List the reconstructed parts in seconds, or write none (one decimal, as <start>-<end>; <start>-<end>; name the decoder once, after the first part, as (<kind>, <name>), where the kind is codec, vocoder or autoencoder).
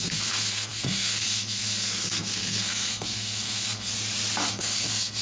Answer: 0.0-3.9 (codec, SNAC); 4.5-5.2